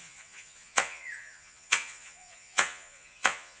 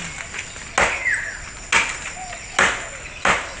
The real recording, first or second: second